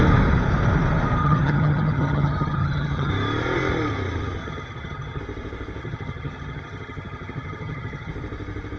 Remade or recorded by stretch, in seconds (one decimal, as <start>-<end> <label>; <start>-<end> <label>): 0.0-1.2 recorded; 1.2-3.1 remade; 3.1-4.4 recorded; 4.4-5.2 remade; 5.2-5.8 recorded; 5.8-8.1 remade; 8.1-8.8 recorded